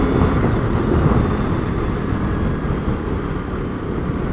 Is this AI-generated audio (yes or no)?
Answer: no